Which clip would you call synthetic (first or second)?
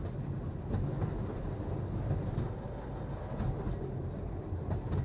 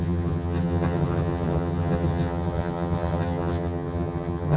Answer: second